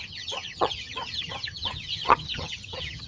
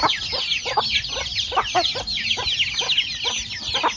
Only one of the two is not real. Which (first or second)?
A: first